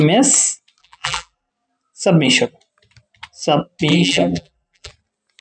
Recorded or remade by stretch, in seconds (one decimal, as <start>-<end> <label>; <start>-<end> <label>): 0.0-0.8 recorded; 0.8-1.5 remade; 1.5-3.9 recorded; 3.9-4.9 remade; 4.9-5.4 recorded

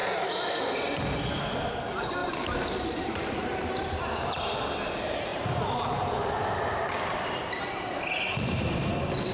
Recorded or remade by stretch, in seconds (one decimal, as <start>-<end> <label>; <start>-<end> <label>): 0.0-2.2 recorded; 2.2-4.4 remade; 4.4-5.3 recorded; 5.3-7.7 remade; 7.7-9.3 recorded

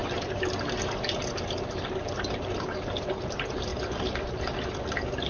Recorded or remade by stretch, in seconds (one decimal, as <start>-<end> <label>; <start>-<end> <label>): 0.0-1.2 remade; 1.2-3.7 recorded; 3.7-5.3 remade

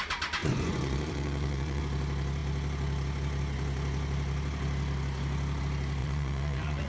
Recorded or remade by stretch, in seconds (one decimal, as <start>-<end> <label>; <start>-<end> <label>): 0.0-0.4 recorded; 0.4-1.8 remade; 1.8-6.0 recorded; 6.0-6.9 remade

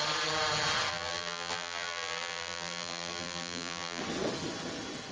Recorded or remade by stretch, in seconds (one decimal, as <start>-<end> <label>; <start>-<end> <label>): 0.0-0.9 recorded; 0.9-4.0 remade; 4.0-5.1 recorded

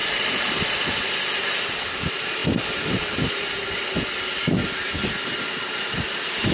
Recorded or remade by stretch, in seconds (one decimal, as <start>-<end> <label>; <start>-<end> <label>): 0.0-6.5 recorded

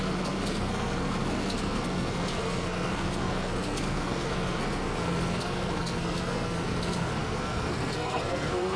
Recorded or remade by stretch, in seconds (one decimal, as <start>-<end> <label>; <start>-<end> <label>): 0.0-8.8 remade

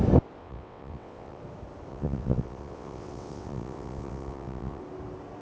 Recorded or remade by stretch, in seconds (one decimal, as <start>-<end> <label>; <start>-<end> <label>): 0.0-0.4 recorded; 0.4-1.4 remade; 1.4-1.9 recorded; 1.9-4.8 remade; 4.8-5.4 recorded